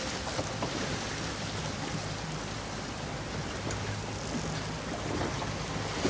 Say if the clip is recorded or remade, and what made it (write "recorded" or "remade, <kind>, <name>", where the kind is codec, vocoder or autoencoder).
recorded